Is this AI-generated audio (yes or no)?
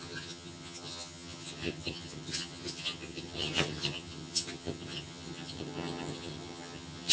yes